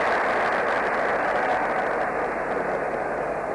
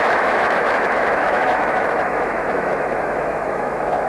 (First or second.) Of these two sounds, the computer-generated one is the second